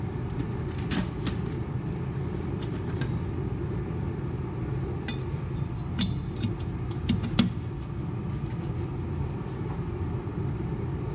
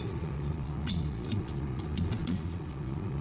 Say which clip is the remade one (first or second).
second